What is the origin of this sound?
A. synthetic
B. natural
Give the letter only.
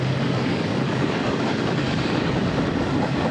A